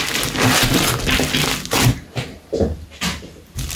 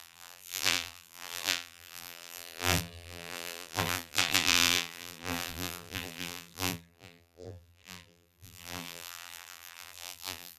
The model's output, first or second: second